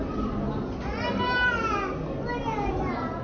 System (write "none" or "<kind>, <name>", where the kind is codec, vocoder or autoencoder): none